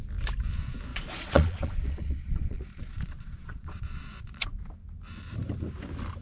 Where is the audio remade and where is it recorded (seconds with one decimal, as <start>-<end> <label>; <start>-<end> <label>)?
0.0-0.9 recorded; 0.9-4.6 remade; 4.6-6.2 recorded